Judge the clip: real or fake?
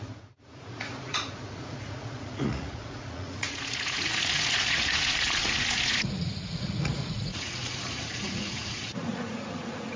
fake